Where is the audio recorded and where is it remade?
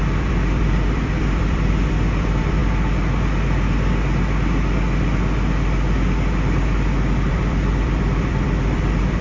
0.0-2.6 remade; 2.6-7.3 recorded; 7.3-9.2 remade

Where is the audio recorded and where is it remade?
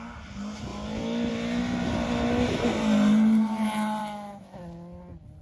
0.0-4.0 recorded; 4.0-4.6 remade; 4.6-5.4 recorded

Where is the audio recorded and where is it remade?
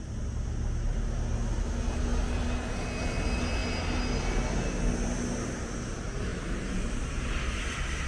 0.0-6.3 recorded; 6.3-7.4 remade; 7.4-8.1 recorded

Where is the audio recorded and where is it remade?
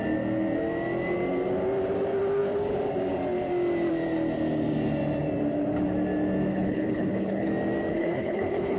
0.0-6.5 recorded; 6.5-7.5 remade; 7.5-7.9 recorded; 7.9-8.8 remade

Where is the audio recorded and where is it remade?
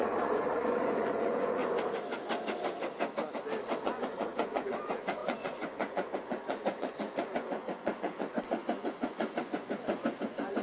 0.0-1.6 remade; 1.6-3.8 recorded; 3.8-10.6 remade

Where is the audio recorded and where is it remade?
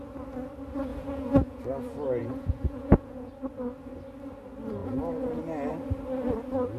0.0-0.9 recorded; 0.9-1.6 remade; 1.6-2.2 recorded; 2.2-3.3 remade; 3.3-4.8 recorded; 4.8-5.4 remade; 5.4-6.8 recorded